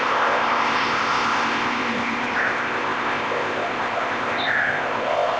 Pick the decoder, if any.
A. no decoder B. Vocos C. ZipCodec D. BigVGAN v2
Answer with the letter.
C